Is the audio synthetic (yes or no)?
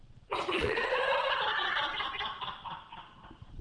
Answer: yes